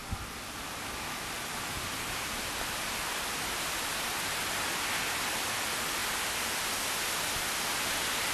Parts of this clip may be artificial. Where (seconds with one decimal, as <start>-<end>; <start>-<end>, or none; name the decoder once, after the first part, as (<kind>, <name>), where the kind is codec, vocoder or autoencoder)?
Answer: none